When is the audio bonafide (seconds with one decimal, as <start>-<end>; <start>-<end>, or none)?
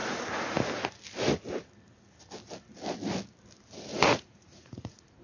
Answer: 0.0-3.9